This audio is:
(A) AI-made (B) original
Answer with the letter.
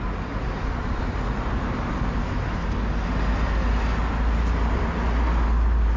B